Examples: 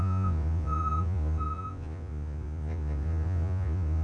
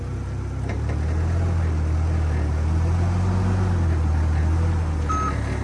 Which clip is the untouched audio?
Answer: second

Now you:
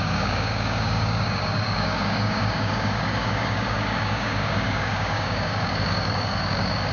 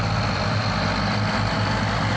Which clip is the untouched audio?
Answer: second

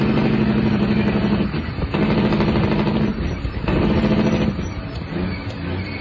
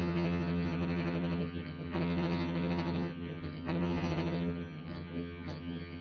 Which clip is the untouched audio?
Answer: first